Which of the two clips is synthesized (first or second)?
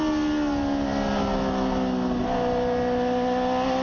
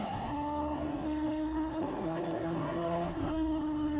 second